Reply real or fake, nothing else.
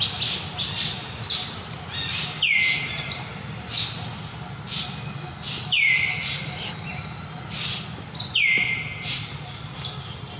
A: real